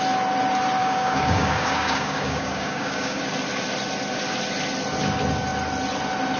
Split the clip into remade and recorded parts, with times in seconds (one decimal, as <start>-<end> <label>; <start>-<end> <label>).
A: 0.0-0.8 recorded; 0.8-3.2 remade; 3.2-6.4 recorded